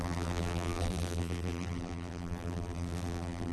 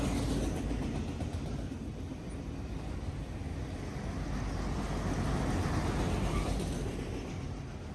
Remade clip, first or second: first